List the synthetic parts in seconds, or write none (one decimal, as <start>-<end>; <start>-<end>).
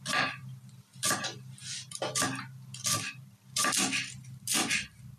none